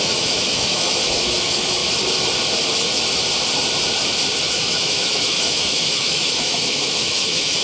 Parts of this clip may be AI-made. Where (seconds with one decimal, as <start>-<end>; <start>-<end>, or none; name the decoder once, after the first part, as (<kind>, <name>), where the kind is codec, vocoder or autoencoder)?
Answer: 0.0-1.8 (autoencoder, DAC-VAE); 4.4-7.6